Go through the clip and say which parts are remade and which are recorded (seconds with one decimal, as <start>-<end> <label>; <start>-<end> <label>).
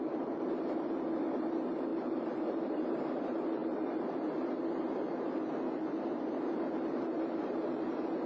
0.0-1.9 recorded; 1.9-3.2 remade; 3.2-8.3 recorded